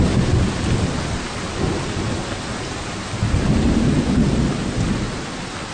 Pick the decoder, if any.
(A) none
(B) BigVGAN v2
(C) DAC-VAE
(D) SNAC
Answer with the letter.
A